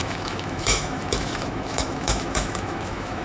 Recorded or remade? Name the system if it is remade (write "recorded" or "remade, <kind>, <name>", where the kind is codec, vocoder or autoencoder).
remade, autoencoder, DAC-VAE